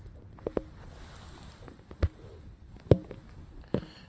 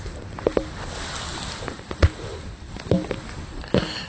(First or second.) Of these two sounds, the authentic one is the first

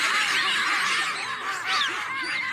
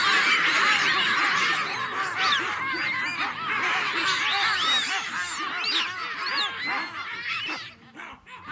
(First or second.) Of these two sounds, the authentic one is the second